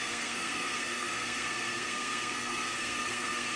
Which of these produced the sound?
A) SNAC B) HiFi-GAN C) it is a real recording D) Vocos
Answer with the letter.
A